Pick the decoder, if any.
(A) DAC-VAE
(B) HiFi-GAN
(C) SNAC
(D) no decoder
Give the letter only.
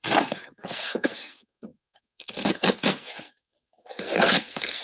C